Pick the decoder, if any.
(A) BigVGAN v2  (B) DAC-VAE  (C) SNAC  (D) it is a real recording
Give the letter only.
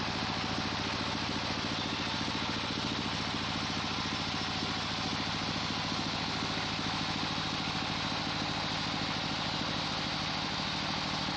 D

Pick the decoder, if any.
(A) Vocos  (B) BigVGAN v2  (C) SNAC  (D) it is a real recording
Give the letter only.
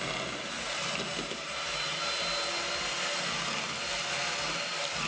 D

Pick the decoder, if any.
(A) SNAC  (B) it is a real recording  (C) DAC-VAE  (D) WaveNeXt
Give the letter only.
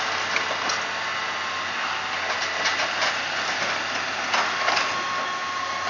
B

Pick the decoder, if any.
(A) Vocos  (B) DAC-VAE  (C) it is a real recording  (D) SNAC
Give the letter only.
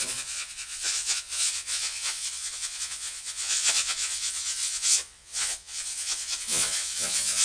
A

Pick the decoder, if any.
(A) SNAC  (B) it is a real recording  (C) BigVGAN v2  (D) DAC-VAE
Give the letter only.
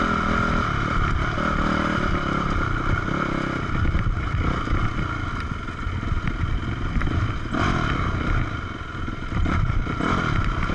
B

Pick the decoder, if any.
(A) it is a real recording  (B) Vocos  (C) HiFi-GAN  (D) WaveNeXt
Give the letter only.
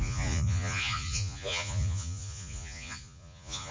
B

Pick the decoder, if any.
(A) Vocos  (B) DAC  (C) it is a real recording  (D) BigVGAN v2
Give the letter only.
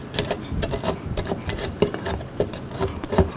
C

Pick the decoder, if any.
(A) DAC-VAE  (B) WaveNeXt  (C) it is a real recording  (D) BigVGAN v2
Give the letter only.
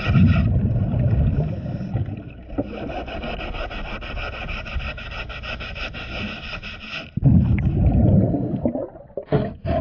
C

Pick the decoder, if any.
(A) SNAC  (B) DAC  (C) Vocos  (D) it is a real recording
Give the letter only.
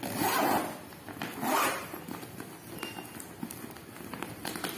D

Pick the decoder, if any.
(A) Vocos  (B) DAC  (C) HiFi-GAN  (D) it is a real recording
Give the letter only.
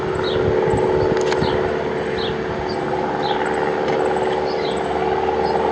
D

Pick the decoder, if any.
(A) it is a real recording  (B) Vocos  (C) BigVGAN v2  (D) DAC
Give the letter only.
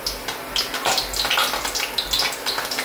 A